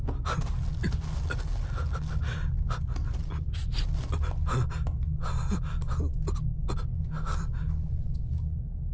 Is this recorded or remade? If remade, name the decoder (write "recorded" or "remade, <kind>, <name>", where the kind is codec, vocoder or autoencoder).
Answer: recorded